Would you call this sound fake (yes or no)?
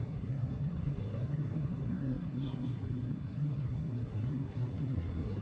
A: yes